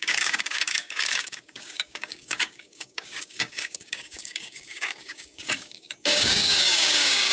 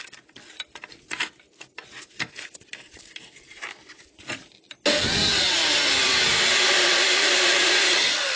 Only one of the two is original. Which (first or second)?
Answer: second